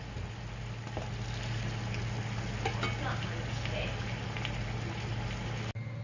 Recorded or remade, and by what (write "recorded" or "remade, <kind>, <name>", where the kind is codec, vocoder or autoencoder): recorded